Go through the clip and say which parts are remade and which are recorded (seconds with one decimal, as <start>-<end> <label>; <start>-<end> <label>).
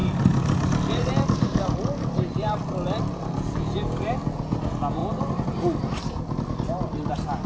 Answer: 0.0-7.5 recorded